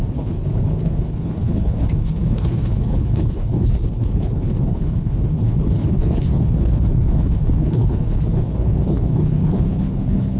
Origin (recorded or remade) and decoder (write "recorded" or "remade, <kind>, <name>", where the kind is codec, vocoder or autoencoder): remade, codec, HILCodec